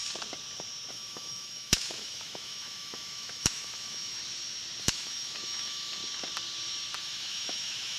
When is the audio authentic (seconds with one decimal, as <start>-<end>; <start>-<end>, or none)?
0.0-0.9; 4.2-4.8; 6.0-7.0